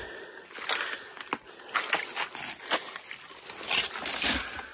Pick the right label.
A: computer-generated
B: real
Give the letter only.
B